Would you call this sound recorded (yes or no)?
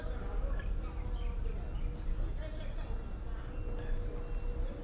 yes